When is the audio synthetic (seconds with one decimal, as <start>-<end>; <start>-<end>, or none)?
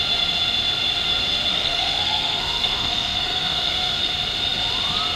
1.5-4.0